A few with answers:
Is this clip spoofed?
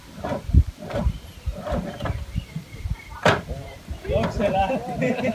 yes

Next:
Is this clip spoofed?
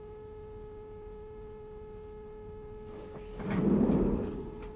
no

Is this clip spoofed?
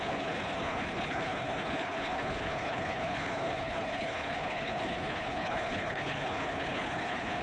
yes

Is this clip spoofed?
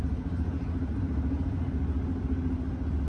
no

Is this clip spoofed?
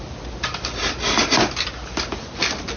no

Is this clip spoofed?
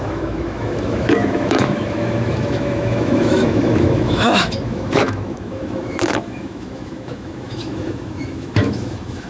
yes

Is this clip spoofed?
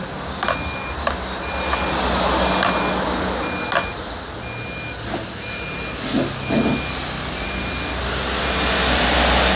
no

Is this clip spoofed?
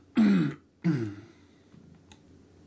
no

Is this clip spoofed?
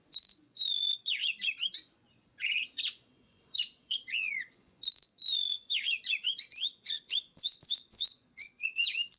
yes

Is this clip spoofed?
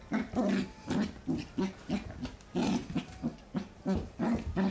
no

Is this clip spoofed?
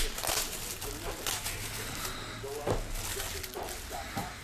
no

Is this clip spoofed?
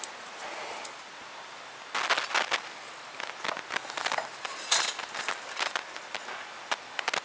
no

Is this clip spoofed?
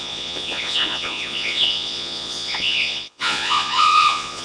yes